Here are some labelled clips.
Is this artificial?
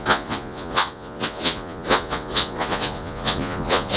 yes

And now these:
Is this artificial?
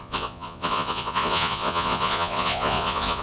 yes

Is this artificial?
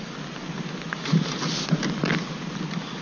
no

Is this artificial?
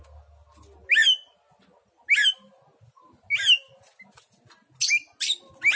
no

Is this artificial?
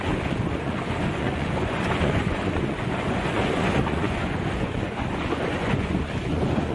yes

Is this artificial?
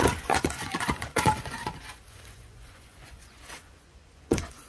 yes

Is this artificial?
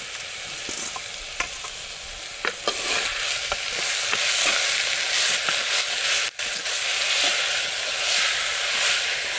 no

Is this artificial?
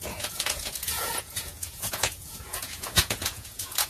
yes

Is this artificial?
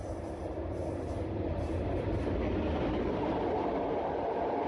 no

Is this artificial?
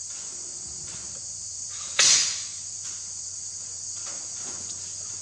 yes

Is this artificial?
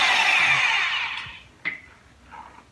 no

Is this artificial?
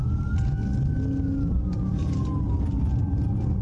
no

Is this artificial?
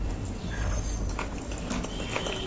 no